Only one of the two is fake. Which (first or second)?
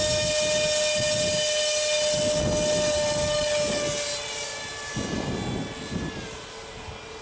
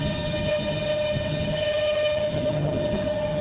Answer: second